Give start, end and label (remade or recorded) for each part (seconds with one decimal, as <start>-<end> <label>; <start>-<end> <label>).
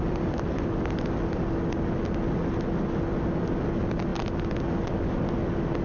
0.0-5.8 recorded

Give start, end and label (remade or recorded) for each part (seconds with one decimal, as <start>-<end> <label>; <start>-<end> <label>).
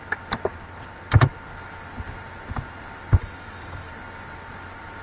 0.0-3.2 recorded; 3.2-3.9 remade; 3.9-5.0 recorded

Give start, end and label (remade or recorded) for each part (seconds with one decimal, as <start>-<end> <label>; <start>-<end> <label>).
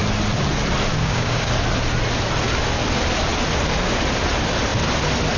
0.0-0.9 recorded; 0.9-1.5 remade; 1.5-5.4 recorded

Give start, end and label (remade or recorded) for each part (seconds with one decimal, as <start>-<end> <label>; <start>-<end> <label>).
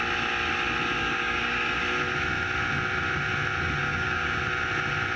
0.0-1.0 recorded; 1.0-1.8 remade; 1.8-3.8 recorded; 3.8-4.4 remade; 4.4-5.2 recorded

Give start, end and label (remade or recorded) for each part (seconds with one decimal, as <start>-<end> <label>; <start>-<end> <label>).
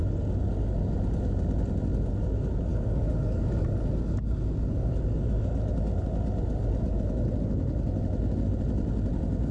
0.0-2.7 recorded; 2.7-3.5 remade; 3.5-9.5 recorded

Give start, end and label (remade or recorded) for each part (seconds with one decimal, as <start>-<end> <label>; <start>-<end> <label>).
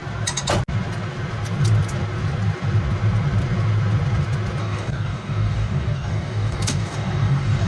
0.0-4.6 recorded; 4.6-7.7 remade